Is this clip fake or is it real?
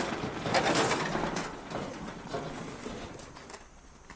real